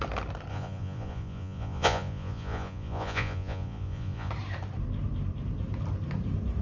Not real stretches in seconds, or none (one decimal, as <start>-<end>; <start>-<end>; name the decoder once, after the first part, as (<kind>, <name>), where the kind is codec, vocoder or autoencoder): 0.5-4.3 (vocoder, Vocos)